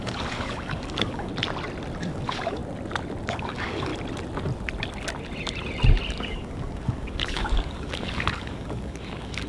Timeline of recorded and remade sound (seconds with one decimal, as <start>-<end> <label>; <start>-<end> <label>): 0.0-1.3 remade; 1.3-2.0 recorded; 2.0-2.6 remade; 2.6-3.3 recorded; 3.3-3.9 remade; 3.9-6.1 recorded; 6.1-9.5 remade